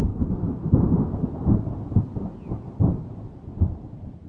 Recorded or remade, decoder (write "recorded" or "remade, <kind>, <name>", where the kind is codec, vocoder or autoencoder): recorded